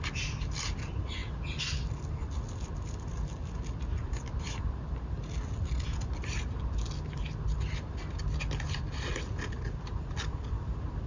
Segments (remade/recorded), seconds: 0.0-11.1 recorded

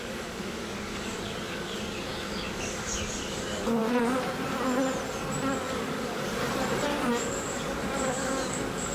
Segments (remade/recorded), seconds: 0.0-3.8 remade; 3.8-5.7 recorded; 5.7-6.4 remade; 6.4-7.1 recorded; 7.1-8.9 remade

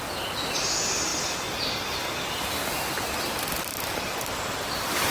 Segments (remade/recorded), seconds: 0.0-5.1 recorded

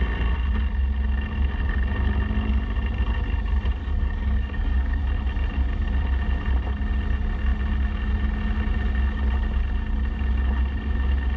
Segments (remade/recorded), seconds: 0.0-3.8 recorded; 3.8-5.0 remade; 5.0-11.4 recorded

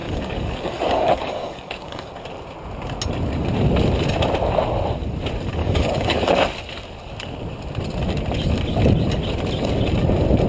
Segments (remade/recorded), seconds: 0.0-2.1 remade; 2.1-5.6 recorded; 5.6-6.3 remade; 6.3-10.5 recorded

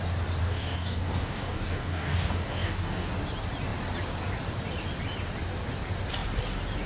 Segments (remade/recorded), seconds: 0.0-0.4 recorded; 0.4-3.1 remade; 3.1-6.9 recorded

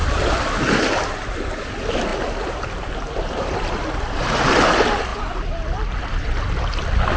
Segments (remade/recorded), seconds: 0.0-7.2 recorded